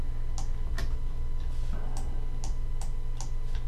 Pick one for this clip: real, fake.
real